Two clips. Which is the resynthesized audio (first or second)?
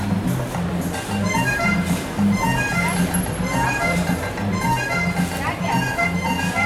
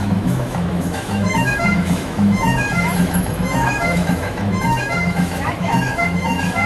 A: second